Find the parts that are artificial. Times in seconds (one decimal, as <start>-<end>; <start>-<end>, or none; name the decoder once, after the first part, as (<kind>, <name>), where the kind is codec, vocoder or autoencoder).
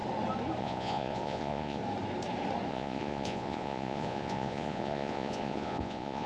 0.6-1.8 (vocoder, Vocos); 2.7-6.3